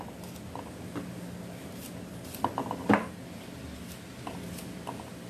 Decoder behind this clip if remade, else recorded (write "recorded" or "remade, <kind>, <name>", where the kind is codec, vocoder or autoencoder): recorded